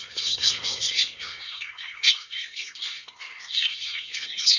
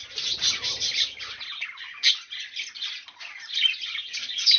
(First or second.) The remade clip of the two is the first